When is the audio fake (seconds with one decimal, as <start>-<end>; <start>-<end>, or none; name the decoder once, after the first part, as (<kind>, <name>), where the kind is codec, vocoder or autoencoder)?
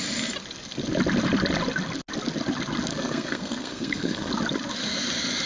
2.9-4.3 (codec, SNAC)